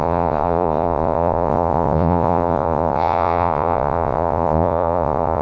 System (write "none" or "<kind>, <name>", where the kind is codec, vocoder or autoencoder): vocoder, Vocos